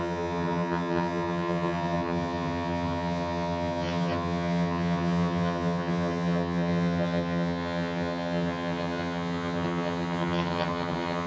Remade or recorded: remade